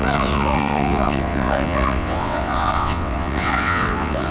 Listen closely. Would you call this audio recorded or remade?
remade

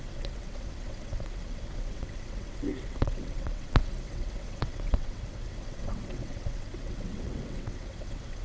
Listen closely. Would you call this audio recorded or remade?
remade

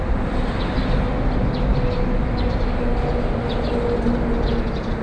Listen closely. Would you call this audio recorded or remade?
recorded